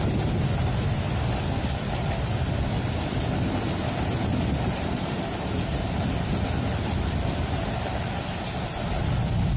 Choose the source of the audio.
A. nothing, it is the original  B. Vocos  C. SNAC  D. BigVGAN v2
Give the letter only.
A